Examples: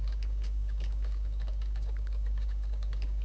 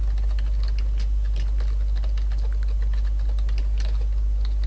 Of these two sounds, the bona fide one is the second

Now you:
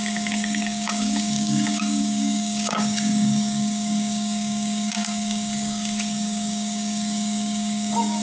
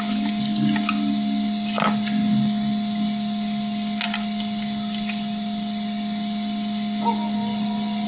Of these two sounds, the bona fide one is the second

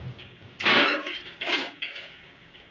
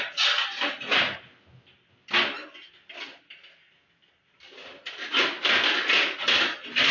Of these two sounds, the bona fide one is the second